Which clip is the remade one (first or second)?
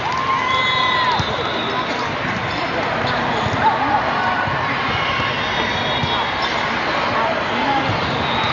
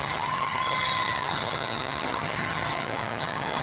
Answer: second